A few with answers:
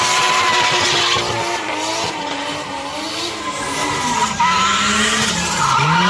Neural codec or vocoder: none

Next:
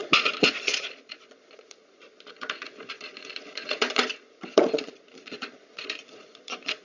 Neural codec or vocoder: vocoder, Vocos